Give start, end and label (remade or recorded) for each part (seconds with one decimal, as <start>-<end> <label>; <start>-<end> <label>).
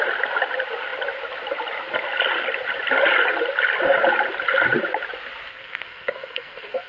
0.0-5.5 recorded; 5.5-6.9 remade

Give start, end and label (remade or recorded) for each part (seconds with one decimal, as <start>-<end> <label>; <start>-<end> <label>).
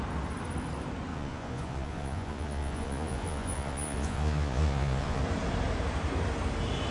0.0-1.1 recorded; 1.1-5.2 remade; 5.2-6.9 recorded